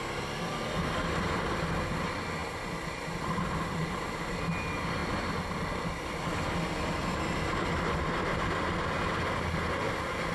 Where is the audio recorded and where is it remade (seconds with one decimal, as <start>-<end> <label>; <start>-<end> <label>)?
0.0-10.3 recorded